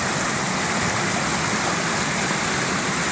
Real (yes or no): yes